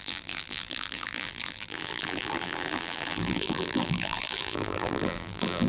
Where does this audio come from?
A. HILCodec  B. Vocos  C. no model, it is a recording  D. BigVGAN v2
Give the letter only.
D